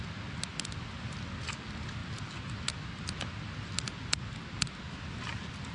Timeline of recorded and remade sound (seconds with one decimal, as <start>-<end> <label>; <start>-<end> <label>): 0.0-5.7 recorded